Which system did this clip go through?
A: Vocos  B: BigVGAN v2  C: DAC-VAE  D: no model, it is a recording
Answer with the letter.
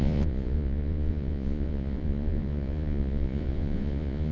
A